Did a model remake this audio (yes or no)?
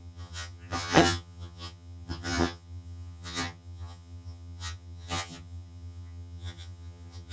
yes